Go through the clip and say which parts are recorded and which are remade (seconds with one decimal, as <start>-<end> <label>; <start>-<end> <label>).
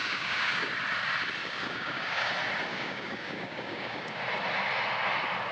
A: 0.0-0.7 remade; 0.7-1.4 recorded; 1.4-2.3 remade; 2.3-2.7 recorded; 2.7-4.2 remade; 4.2-5.5 recorded